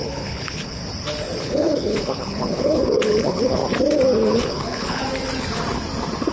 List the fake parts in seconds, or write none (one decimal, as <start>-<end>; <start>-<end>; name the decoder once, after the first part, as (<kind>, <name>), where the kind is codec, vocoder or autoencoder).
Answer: 0.0-0.8 (codec, HILCodec); 1.4-3.6; 4.4-5.0